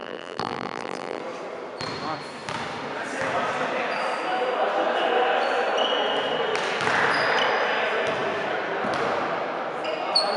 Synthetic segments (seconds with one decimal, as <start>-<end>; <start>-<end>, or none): 0.0-1.2